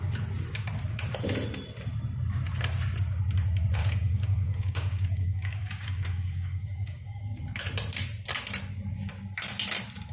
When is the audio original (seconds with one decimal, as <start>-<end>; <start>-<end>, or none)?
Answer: 0.0-3.8; 7.4-10.1